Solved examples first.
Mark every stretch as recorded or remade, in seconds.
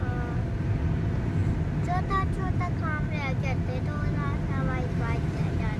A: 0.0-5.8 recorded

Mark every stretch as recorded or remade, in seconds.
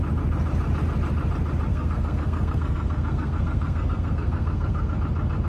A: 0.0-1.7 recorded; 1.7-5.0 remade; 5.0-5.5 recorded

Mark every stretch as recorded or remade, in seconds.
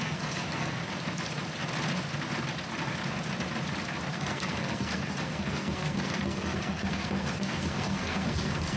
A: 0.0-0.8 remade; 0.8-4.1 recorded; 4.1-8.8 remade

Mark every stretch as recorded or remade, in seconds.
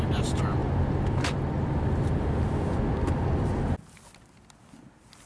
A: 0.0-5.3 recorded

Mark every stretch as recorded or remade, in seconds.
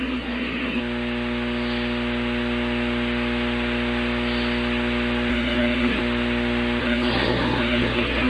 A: 0.0-0.8 remade; 0.8-5.3 recorded; 5.3-6.0 remade; 6.0-6.8 recorded; 6.8-8.3 remade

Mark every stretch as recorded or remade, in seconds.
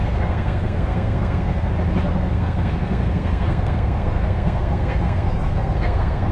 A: 0.0-1.7 remade; 1.7-2.1 recorded; 2.1-6.3 remade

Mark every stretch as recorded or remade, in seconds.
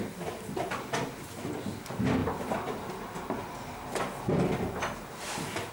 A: 0.0-5.7 recorded